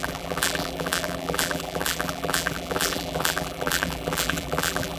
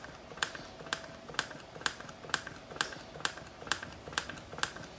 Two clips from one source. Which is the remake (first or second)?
first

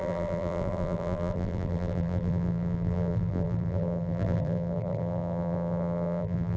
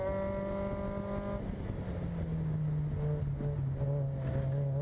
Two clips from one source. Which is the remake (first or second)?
first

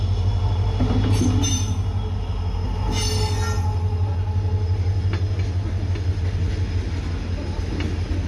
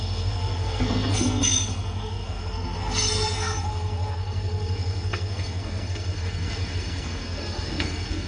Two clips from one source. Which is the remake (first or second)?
second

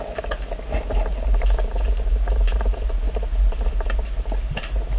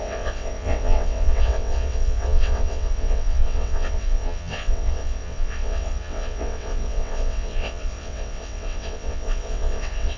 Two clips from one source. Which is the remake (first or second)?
second